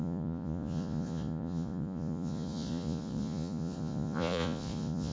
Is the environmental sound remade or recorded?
remade